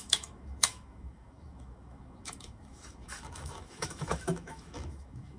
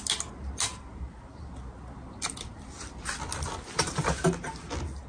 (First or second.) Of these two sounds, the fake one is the first